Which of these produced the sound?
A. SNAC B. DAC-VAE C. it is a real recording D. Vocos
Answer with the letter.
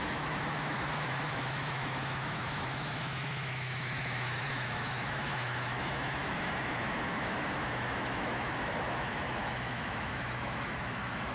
B